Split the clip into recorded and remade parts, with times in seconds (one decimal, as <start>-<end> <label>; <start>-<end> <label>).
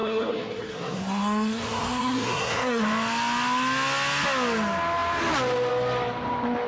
0.0-2.8 remade; 2.8-6.7 recorded